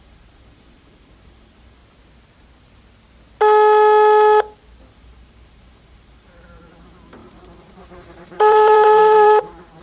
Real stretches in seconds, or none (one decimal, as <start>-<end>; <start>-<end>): 1.8-4.9